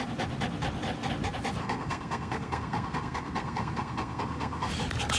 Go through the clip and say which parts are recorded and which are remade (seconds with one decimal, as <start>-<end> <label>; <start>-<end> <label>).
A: 0.0-1.6 recorded; 1.6-4.7 remade; 4.7-5.2 recorded